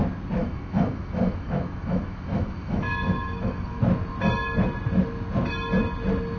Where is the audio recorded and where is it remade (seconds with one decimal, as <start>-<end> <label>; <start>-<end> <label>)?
0.0-0.4 recorded; 0.4-3.8 remade; 3.8-6.4 recorded

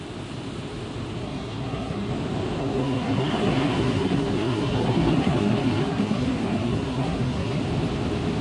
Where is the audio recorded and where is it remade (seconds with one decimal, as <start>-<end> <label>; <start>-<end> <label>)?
0.0-1.2 recorded; 1.2-2.1 remade; 2.1-2.6 recorded; 2.6-7.6 remade; 7.6-8.4 recorded

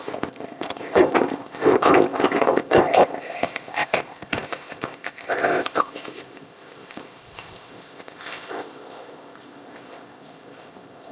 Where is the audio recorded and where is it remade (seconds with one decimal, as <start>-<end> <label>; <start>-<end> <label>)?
0.0-11.1 remade

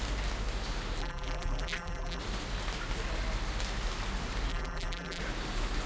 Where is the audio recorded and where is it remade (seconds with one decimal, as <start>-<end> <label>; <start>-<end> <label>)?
0.0-1.0 recorded; 1.0-2.2 remade; 2.2-4.5 recorded; 4.5-5.2 remade; 5.2-5.9 recorded